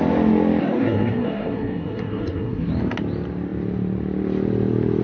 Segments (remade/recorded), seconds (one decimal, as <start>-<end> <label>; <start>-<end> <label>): 0.0-0.6 recorded; 0.6-2.7 remade; 2.7-5.0 recorded